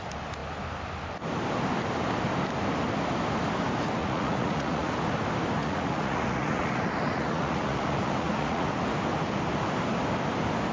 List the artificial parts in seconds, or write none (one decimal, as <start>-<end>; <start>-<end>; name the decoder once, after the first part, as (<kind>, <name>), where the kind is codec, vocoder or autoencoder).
4.0-4.9 (vocoder, Vocos); 5.6-8.7